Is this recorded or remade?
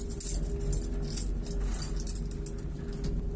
recorded